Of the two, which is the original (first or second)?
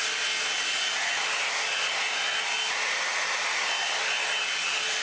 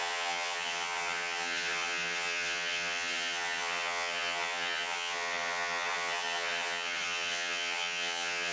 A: first